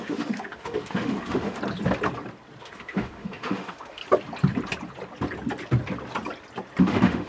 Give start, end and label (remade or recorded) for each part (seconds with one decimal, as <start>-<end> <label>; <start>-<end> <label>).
0.0-1.6 remade; 1.6-2.6 recorded; 2.6-4.0 remade; 4.0-6.8 recorded; 6.8-7.3 remade